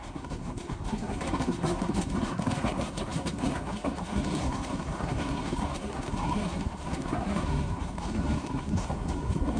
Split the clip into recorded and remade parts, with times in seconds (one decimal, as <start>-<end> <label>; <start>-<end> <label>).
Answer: 0.0-9.6 remade